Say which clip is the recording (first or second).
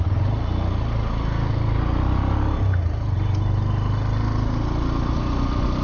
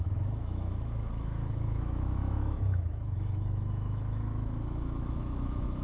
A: first